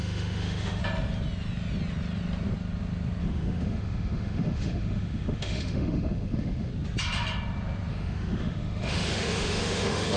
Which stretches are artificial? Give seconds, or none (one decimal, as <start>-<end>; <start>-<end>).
0.0-0.8; 3.2-6.7; 7.9-10.2